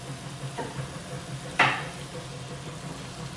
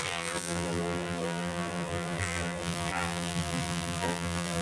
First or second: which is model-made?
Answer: second